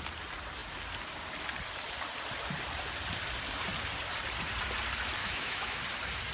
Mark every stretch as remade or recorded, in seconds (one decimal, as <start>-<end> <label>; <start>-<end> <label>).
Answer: 0.0-5.2 recorded; 5.2-5.8 remade; 5.8-6.3 recorded

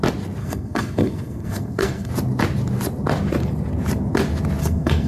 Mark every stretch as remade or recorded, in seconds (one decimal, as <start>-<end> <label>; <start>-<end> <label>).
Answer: 0.0-0.4 recorded; 0.4-2.1 remade; 2.1-4.6 recorded; 4.6-5.1 remade

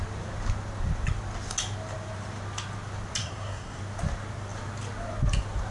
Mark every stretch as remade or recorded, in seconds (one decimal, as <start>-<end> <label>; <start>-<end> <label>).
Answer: 0.0-3.2 recorded; 3.2-3.8 remade; 3.8-5.7 recorded

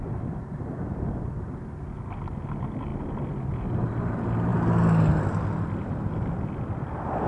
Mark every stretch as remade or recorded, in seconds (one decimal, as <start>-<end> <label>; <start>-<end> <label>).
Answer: 0.0-7.3 recorded

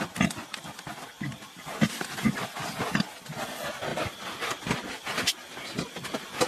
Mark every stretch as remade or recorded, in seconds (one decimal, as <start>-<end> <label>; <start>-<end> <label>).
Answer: 0.0-6.5 recorded

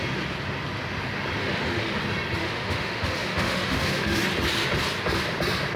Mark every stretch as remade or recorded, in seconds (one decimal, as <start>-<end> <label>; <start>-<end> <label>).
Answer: 0.0-1.4 recorded; 1.4-2.0 remade; 2.0-2.4 recorded; 2.4-4.2 remade; 4.2-5.8 recorded

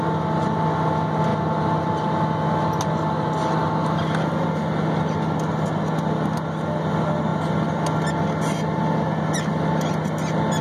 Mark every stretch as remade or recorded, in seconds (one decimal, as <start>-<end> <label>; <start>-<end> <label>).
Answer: 0.0-10.6 recorded

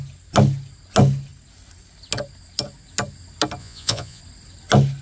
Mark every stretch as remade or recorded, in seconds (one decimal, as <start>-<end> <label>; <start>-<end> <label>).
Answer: 0.0-3.6 recorded; 3.6-4.2 remade; 4.2-5.0 recorded